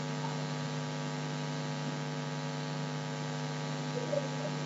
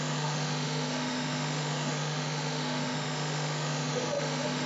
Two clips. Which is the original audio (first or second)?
first